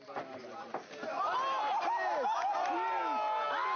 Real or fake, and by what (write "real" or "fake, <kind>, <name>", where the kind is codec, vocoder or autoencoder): real